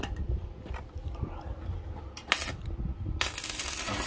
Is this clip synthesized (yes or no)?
no